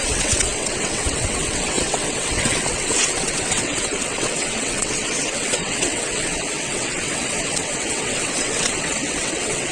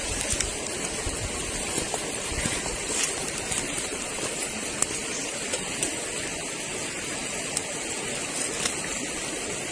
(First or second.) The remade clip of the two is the first